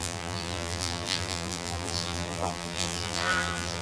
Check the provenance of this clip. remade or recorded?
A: remade